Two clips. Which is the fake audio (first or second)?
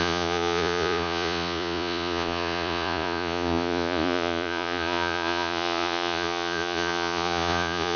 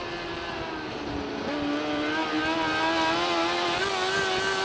first